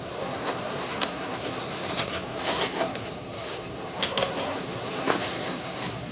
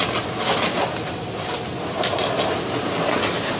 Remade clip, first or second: first